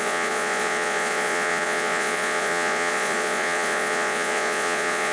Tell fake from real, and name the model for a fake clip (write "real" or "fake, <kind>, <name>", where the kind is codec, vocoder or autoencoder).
fake, vocoder, Vocos